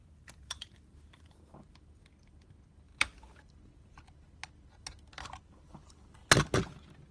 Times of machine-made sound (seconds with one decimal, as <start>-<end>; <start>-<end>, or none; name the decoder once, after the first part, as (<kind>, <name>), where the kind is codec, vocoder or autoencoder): 0.0-1.6 (vocoder, BigVGAN v2)